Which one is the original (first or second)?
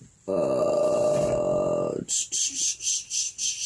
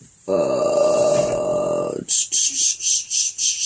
first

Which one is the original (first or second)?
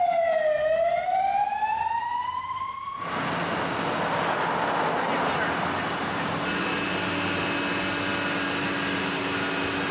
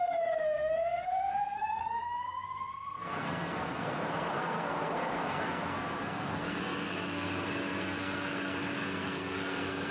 first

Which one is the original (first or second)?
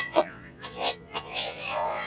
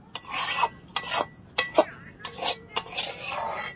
second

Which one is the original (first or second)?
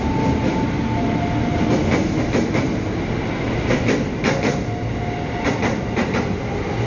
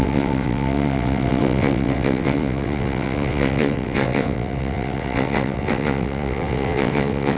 first